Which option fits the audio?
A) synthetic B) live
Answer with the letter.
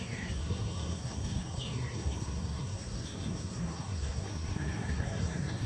A